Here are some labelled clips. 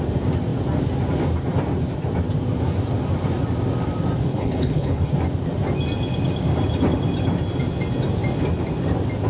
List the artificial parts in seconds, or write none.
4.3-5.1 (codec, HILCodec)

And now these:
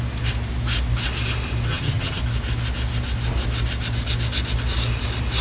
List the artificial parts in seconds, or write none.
1.7-2.2 (vocoder, HiFi-GAN)

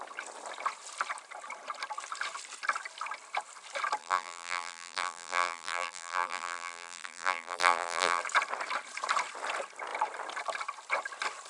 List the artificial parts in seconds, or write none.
4.0-8.2 (vocoder, BigVGAN v2)

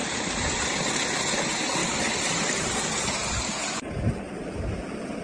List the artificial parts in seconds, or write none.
0.0-1.3 (vocoder, BigVGAN v2)

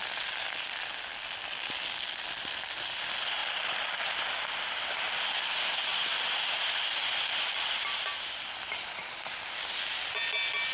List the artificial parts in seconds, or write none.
none